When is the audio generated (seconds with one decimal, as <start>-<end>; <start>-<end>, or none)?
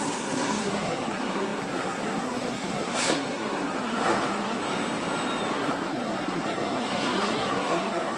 0.0-4.6; 5.5-8.2